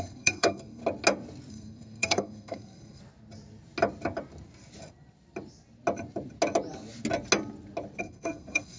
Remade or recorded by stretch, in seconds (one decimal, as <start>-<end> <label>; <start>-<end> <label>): 0.0-0.8 remade; 0.8-1.5 recorded; 1.5-3.0 remade; 3.0-8.0 recorded; 8.0-8.8 remade